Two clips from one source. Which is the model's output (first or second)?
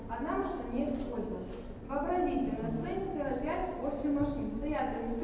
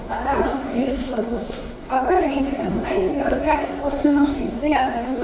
second